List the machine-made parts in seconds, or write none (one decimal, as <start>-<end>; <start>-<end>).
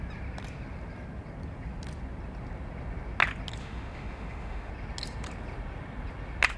3.6-4.7